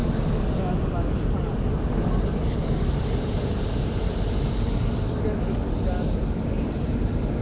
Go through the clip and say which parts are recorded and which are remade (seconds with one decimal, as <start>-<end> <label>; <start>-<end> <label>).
0.0-2.5 recorded; 2.5-3.9 remade; 3.9-7.4 recorded